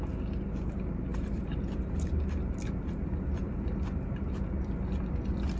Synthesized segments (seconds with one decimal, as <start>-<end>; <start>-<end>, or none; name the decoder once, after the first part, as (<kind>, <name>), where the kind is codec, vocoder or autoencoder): 1.1-4.5 (vocoder, BigVGAN v2)